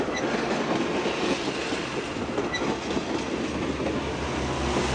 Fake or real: real